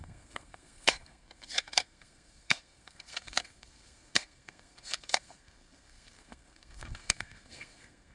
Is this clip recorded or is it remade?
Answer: remade